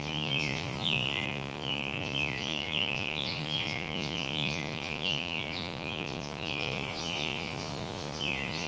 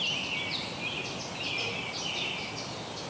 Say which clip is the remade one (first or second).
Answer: first